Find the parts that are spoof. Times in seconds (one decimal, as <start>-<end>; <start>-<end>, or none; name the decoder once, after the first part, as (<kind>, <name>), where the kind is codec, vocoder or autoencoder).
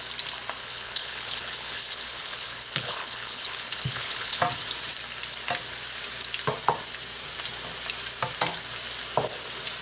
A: 0.6-4.4 (codec, HILCodec)